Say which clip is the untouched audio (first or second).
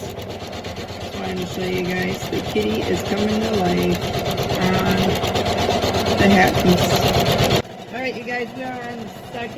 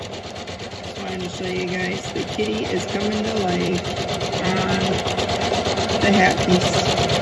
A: first